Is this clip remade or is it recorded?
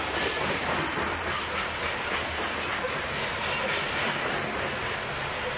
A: recorded